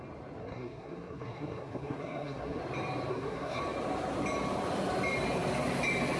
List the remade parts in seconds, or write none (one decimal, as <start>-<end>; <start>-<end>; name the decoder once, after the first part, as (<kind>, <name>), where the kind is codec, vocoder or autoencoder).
0.4-2.6 (codec, SNAC); 3.1-3.6